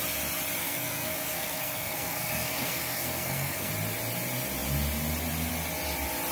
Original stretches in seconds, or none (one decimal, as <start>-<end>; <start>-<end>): 0.0-0.6; 3.7-6.3